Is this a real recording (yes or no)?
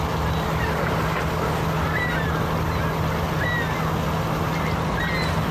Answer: yes